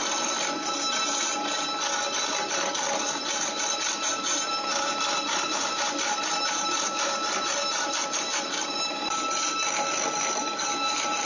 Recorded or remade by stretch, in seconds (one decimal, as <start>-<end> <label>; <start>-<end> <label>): 0.0-4.1 recorded; 4.1-11.3 remade